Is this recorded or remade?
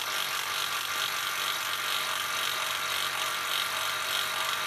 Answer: recorded